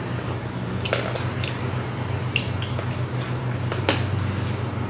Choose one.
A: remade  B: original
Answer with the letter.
B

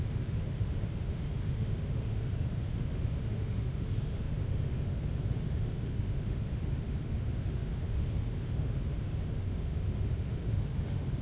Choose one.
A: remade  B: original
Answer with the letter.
A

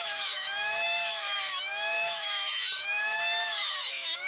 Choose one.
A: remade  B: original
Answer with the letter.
A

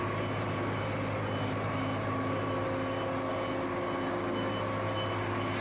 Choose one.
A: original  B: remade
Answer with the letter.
A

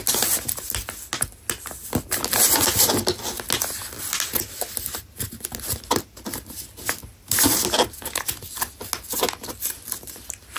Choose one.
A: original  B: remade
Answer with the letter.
A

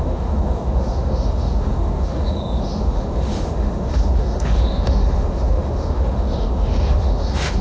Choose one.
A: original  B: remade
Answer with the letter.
B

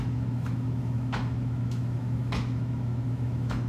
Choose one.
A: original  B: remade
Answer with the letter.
B